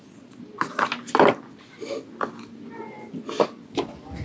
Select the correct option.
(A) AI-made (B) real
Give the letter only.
B